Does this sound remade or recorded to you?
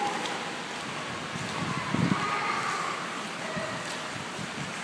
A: recorded